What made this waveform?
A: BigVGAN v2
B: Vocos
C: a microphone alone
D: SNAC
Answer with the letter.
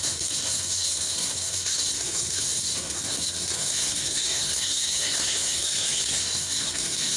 D